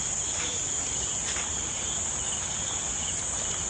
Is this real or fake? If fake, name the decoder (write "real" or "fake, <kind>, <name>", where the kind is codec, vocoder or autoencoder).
real